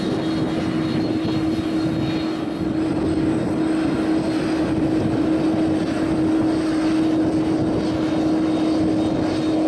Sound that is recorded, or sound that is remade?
recorded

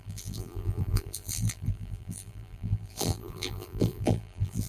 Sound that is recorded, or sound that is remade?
remade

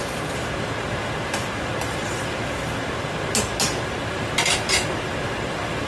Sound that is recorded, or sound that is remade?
recorded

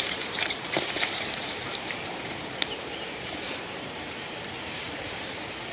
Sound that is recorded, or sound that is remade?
remade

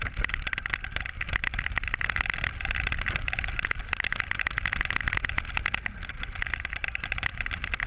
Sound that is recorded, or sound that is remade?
recorded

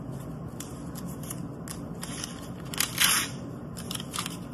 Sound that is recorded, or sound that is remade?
recorded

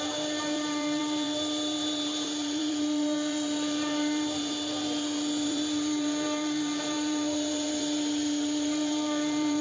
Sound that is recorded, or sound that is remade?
remade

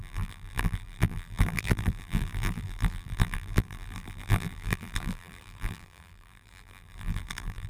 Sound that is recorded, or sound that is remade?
remade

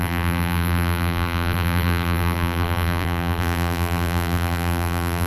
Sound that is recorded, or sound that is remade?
remade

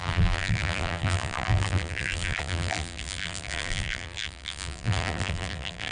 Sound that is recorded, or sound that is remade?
remade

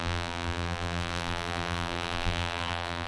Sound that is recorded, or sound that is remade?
remade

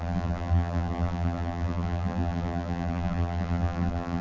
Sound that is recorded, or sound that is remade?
remade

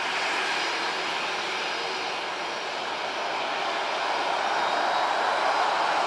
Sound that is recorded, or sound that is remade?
recorded